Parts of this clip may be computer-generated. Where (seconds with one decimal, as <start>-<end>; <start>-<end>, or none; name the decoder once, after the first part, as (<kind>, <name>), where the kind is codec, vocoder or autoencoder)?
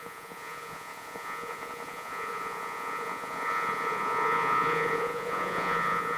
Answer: 0.0-6.2 (vocoder, Vocos)